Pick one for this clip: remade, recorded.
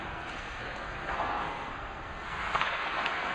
remade